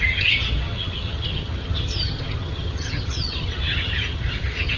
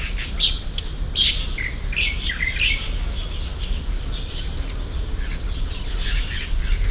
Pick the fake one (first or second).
first